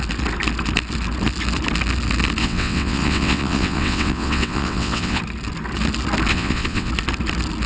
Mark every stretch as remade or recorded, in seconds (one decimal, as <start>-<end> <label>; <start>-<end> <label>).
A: 0.0-2.4 recorded; 2.4-5.2 remade; 5.2-6.3 recorded; 6.3-6.9 remade; 6.9-7.7 recorded